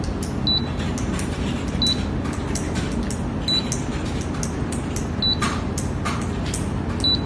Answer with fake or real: real